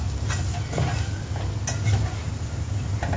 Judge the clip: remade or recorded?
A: recorded